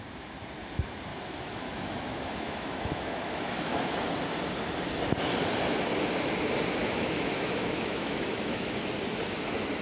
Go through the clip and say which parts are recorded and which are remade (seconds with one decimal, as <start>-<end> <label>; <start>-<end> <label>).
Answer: 0.0-1.1 recorded; 1.1-4.1 remade; 4.1-6.8 recorded; 6.8-8.8 remade; 8.8-9.8 recorded